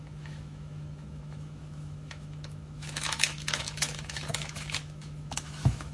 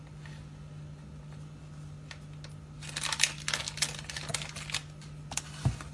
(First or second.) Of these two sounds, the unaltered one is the second